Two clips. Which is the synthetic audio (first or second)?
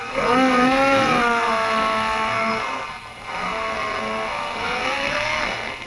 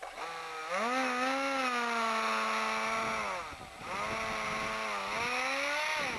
first